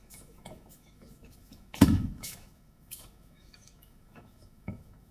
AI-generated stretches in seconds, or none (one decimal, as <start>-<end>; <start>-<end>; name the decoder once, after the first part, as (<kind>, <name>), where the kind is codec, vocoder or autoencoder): 0.0-5.1 (autoencoder, DAC-VAE)